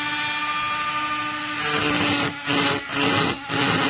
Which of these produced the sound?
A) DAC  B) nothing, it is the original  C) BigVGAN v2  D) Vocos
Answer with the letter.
B